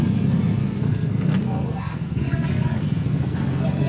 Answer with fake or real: fake